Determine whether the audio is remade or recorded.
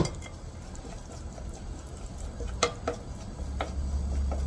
recorded